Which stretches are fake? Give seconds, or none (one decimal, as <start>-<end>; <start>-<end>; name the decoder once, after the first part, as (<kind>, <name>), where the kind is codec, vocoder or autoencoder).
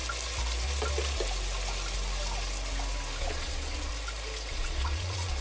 3.2-3.9 (vocoder, Vocos); 4.5-5.4